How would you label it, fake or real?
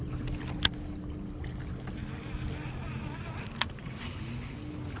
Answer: real